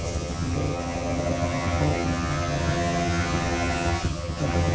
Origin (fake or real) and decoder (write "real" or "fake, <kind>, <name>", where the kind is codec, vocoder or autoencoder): fake, vocoder, HiFi-GAN